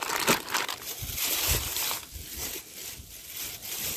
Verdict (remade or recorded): recorded